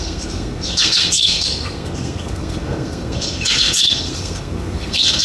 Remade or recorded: remade